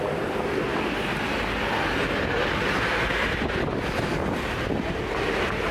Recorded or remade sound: recorded